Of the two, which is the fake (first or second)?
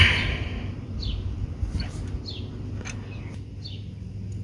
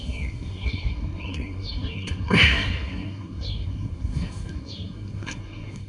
second